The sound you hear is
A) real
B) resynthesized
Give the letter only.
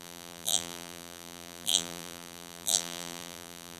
B